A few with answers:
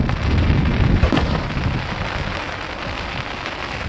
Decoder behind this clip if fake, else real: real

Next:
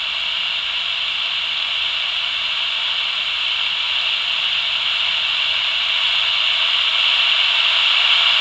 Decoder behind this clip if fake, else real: real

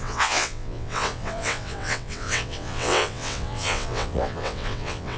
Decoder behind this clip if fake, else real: fake, vocoder, WaveNeXt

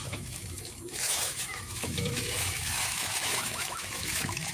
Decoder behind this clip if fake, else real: fake, autoencoder, DAC-VAE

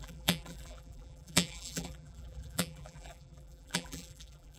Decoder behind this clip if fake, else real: fake, vocoder, BigVGAN v2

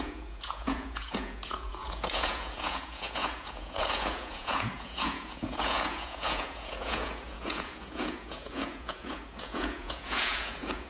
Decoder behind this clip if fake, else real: fake, vocoder, Vocos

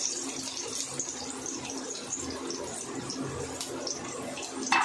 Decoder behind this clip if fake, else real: fake, vocoder, BigVGAN v2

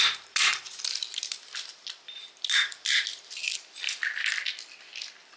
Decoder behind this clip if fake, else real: real